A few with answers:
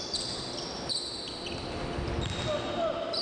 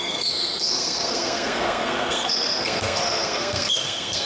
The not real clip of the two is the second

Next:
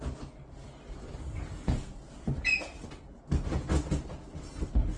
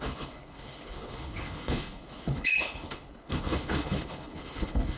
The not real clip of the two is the second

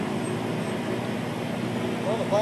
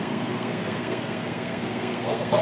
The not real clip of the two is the second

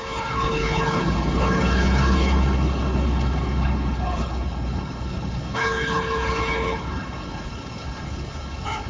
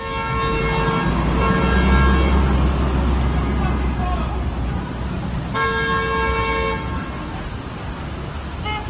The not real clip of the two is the first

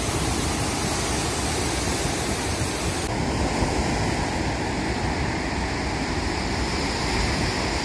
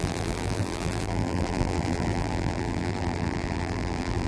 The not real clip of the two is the second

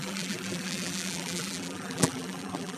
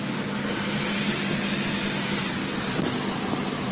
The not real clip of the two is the first